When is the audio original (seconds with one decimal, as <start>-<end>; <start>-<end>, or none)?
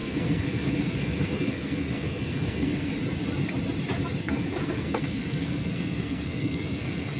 2.9-4.2